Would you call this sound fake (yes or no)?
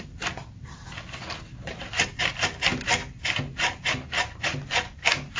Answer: no